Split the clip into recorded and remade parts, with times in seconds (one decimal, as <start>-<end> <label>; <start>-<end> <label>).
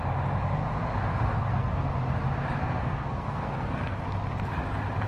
0.0-1.1 recorded; 1.1-1.9 remade; 1.9-2.6 recorded; 2.6-4.0 remade; 4.0-5.1 recorded